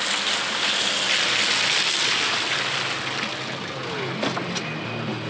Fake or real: real